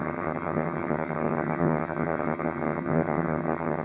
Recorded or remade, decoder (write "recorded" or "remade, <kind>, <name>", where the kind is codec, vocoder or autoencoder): remade, vocoder, HiFi-GAN